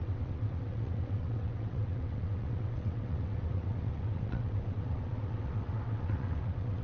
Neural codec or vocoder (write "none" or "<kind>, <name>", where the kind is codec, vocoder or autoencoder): vocoder, WaveNeXt